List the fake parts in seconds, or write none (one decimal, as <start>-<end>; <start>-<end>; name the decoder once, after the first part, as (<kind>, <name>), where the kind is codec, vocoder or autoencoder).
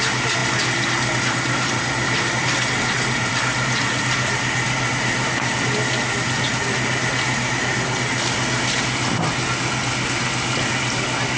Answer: none